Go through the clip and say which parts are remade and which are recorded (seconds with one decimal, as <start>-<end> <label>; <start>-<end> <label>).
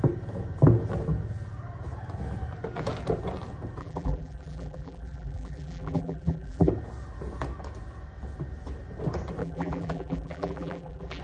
0.0-3.8 recorded; 3.8-6.7 remade; 6.7-9.4 recorded; 9.4-11.2 remade